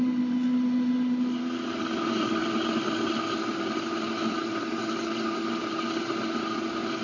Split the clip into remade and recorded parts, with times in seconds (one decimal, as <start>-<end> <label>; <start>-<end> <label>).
0.0-7.0 recorded